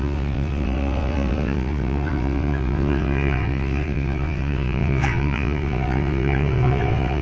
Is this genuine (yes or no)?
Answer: no